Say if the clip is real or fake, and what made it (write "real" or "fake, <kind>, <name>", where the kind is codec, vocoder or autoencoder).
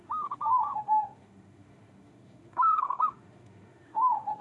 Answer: fake, autoencoder, DAC-VAE